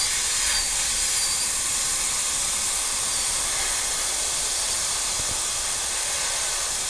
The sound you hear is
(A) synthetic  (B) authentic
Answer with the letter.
B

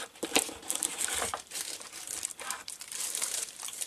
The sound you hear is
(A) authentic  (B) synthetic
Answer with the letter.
B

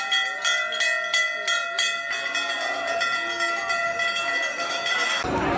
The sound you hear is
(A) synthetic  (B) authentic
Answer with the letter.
B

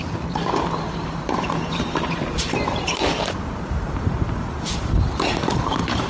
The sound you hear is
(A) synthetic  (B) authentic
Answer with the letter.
A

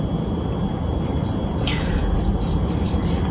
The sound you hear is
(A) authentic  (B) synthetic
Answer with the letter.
B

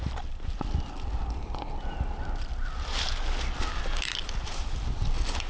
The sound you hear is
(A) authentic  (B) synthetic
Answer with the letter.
A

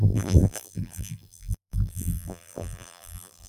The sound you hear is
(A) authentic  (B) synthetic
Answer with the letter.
B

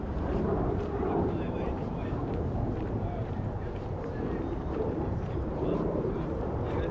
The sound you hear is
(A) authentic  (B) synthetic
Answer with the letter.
B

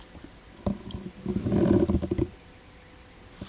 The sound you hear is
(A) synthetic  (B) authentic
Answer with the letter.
A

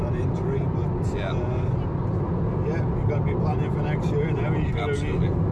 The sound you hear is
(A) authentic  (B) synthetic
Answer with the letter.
A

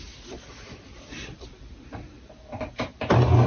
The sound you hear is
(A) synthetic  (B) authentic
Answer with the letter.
A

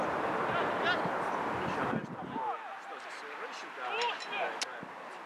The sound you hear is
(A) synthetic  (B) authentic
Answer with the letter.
B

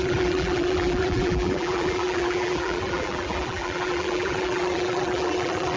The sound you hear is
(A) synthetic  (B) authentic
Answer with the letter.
A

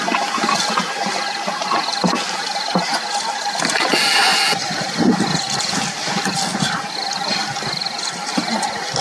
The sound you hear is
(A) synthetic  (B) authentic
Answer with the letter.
B